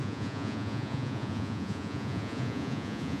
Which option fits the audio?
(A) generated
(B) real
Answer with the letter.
A